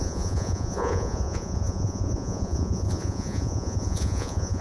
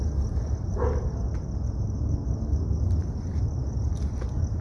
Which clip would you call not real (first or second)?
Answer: first